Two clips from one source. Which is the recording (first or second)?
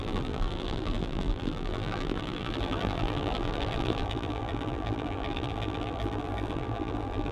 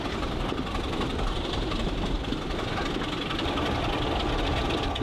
second